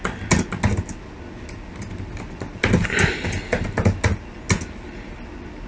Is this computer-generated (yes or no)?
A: no